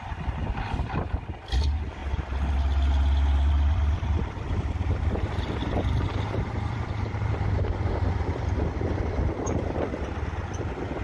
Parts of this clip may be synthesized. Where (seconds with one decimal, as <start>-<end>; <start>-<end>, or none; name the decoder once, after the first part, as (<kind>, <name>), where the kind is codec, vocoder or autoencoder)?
0.0-2.0 (vocoder, BigVGAN v2); 3.5-11.0